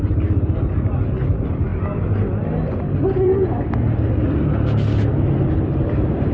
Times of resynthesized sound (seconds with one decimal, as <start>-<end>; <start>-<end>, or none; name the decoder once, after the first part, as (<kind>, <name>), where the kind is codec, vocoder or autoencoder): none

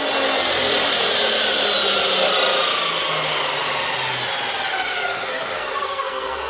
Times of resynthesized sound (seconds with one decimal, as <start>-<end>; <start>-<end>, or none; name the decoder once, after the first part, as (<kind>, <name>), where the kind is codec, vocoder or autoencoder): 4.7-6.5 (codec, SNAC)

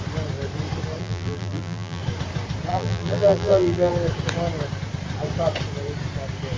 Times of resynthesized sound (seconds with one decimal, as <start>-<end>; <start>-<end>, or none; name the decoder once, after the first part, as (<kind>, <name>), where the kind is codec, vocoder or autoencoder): 1.0-2.0 (vocoder, BigVGAN v2); 2.7-3.9

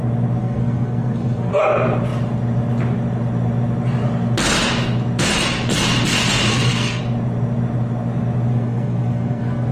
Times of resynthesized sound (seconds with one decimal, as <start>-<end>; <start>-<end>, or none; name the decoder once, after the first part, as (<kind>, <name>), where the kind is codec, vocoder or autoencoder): 0.4-1.5 (codec, SNAC); 6.5-7.0; 8.5-9.7

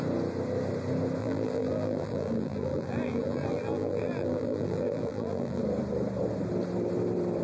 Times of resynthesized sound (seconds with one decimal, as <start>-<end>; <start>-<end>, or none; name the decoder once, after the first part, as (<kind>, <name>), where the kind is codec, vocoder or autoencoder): 1.2-5.6 (vocoder, BigVGAN v2)

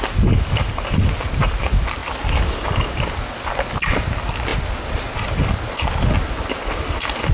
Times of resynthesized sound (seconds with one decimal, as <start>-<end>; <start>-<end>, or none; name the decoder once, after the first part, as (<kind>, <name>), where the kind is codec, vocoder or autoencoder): none

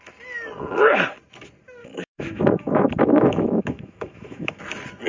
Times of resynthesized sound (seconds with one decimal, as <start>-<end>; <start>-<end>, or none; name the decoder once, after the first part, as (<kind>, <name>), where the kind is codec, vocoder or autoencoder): 1.8-4.6 (autoencoder, DAC-VAE)

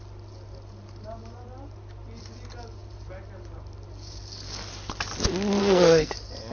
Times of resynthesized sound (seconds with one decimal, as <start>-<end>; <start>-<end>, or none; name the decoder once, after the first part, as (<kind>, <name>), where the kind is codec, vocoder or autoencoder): 5.6-6.1 (codec, SNAC)